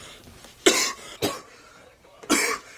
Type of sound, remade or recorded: remade